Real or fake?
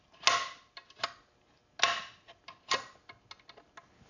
real